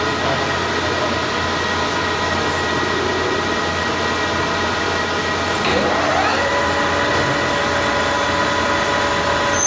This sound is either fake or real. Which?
real